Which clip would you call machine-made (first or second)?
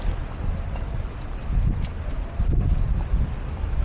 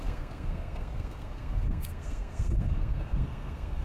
second